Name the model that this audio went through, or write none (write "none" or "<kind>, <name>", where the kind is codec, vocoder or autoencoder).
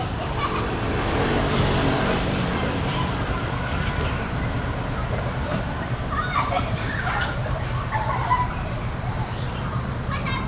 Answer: vocoder, BigVGAN v2